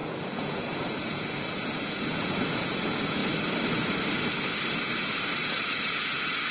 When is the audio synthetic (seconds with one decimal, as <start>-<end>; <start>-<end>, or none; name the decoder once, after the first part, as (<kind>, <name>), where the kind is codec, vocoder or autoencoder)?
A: 0.0-3.2 (vocoder, Vocos); 5.6-6.5

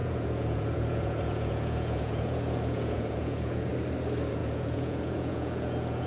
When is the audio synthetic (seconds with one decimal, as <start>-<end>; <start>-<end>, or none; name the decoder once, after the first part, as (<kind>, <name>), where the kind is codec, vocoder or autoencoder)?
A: 0.0-3.7 (vocoder, Vocos); 4.4-6.1